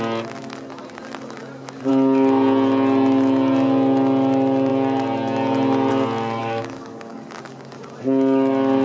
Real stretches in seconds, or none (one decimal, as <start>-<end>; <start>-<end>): 0.0-6.4; 7.2-8.8